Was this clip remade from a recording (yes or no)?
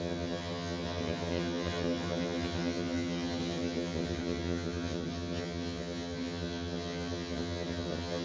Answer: yes